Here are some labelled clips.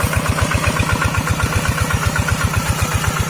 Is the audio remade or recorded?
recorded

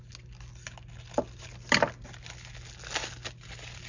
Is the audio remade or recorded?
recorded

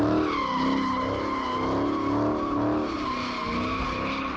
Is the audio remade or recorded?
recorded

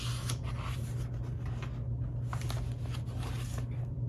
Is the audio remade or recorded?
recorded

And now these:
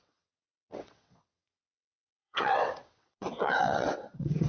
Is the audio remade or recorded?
remade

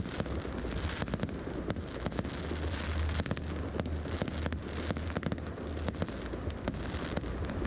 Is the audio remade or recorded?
recorded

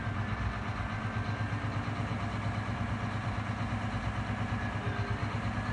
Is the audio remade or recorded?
recorded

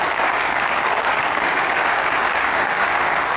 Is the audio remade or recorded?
remade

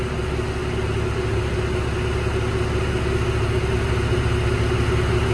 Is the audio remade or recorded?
recorded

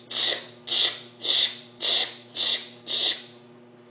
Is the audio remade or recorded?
recorded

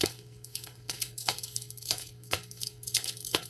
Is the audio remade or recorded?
remade